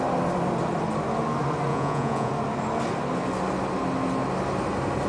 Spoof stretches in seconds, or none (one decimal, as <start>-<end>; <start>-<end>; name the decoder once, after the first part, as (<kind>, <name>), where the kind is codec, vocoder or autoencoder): 1.7-2.3 (vocoder, Vocos)